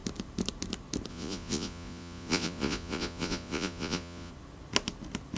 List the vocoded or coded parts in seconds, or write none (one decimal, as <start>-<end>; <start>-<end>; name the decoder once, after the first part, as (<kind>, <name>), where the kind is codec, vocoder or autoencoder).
1.1-4.3 (vocoder, Vocos)